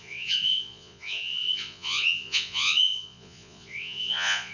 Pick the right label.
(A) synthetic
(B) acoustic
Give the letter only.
A